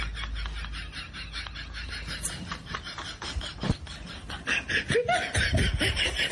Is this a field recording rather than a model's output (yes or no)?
yes